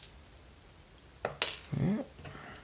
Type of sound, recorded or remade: recorded